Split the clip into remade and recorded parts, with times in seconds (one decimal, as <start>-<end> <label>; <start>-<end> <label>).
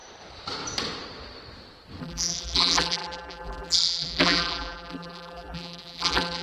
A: 0.0-2.0 recorded; 2.0-6.4 remade